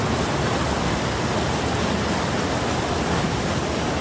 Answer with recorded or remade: recorded